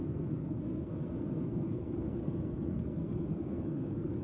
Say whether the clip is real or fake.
fake